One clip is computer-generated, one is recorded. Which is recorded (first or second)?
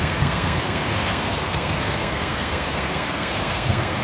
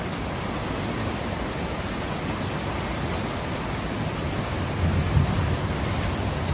second